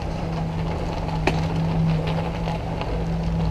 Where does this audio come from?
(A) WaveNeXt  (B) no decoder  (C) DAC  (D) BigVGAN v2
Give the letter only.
B